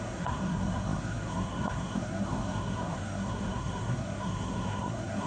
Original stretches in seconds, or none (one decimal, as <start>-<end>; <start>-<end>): none